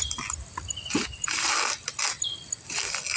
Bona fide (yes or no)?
yes